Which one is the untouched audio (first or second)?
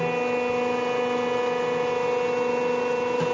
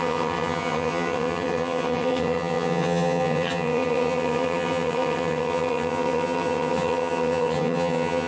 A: first